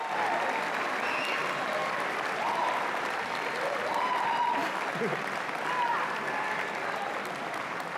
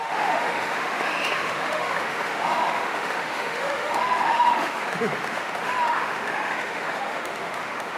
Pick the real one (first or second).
first